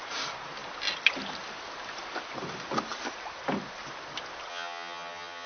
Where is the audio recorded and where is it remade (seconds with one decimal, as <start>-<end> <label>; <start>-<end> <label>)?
0.0-4.5 recorded; 4.5-5.5 remade